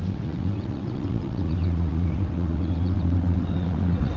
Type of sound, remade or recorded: remade